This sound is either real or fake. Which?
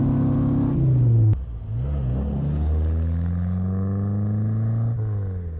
real